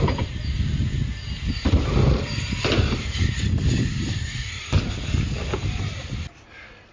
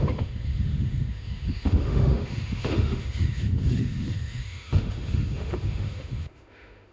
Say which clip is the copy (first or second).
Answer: second